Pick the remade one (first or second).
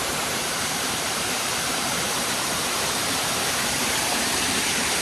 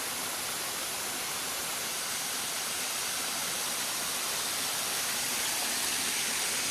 first